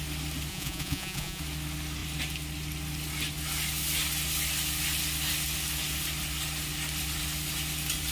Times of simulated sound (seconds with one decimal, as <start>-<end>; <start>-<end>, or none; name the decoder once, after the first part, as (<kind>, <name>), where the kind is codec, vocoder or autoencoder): 0.5-1.4 (vocoder, Vocos)